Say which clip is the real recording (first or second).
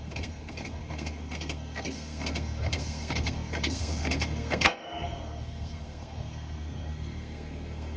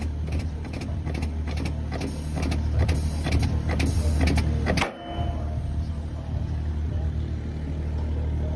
second